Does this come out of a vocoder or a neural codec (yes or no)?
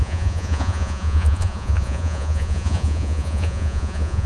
yes